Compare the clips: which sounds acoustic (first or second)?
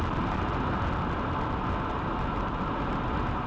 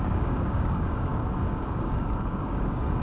first